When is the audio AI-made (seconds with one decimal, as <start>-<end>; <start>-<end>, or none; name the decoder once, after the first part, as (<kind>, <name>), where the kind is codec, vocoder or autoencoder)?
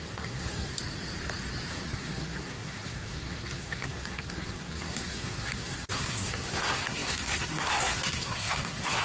0.0-0.7 (codec, SNAC); 1.7-9.0